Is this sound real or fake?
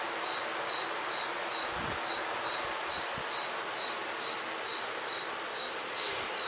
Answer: real